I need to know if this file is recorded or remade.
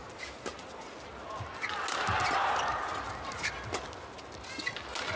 recorded